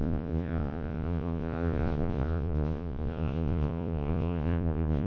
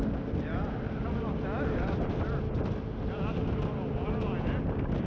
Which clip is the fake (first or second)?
first